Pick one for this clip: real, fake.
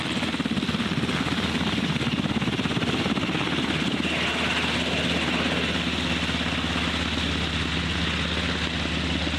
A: real